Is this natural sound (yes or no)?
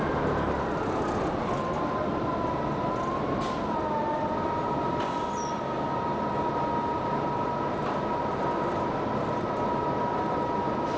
yes